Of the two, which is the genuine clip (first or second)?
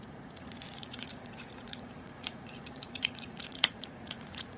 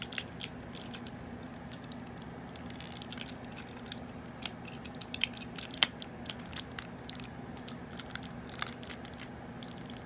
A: second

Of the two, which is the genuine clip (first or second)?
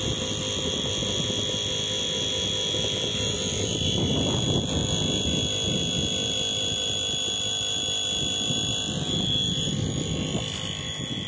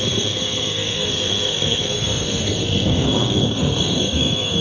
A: first